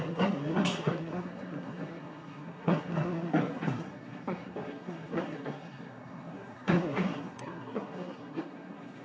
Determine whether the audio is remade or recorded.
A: remade